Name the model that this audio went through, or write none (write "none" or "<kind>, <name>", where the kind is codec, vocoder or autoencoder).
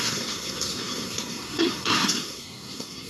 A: codec, SNAC